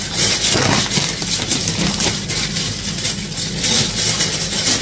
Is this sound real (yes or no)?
yes